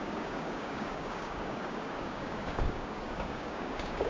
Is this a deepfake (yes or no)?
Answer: yes